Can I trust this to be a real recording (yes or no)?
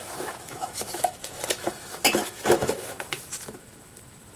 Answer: no